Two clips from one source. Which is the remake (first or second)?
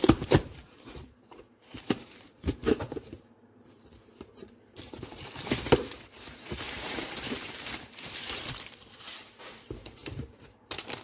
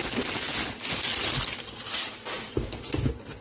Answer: first